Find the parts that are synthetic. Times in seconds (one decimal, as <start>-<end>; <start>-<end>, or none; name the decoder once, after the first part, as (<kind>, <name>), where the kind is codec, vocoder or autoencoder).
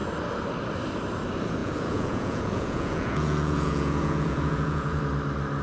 1.6-5.0 (vocoder, Vocos)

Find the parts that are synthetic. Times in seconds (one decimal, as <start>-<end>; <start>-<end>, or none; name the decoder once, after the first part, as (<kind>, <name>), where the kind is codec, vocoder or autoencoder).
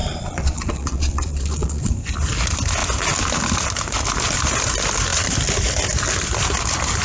0.0-1.9 (vocoder, Vocos)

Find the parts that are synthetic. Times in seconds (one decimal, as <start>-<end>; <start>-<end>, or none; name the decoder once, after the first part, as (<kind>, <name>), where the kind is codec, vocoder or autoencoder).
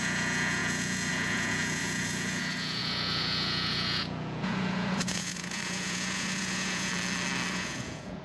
0.0-6.9 (vocoder, Vocos); 7.5-8.2